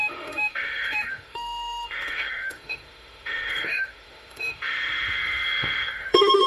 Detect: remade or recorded remade